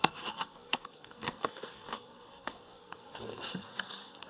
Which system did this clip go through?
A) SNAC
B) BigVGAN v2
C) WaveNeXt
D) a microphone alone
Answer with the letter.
A